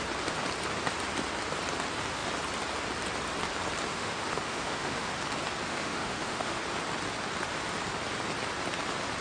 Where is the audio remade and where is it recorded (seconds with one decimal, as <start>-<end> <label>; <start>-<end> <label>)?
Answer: 0.0-3.9 recorded; 3.9-5.1 remade; 5.1-5.7 recorded; 5.7-6.6 remade; 6.6-9.2 recorded